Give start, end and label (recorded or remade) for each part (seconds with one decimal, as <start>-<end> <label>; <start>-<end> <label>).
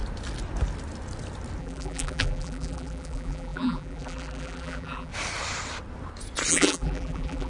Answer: 0.0-1.6 recorded; 1.6-5.1 remade; 5.1-6.5 recorded; 6.5-7.5 remade